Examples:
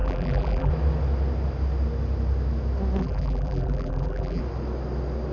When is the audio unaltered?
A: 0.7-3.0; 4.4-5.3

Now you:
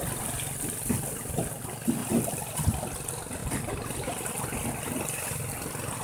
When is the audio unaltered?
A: 0.0-3.4; 4.3-6.0

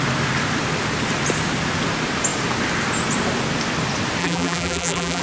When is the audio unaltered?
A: 0.0-4.2

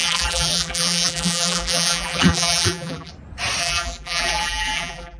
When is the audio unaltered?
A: 3.1-3.6

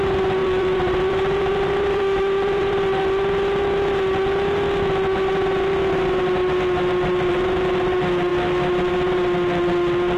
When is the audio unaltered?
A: 0.0-0.4; 3.0-10.2

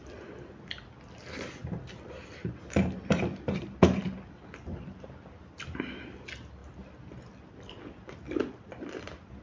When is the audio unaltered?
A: 0.0-9.4

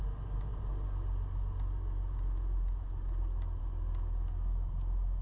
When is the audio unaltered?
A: 0.0-5.2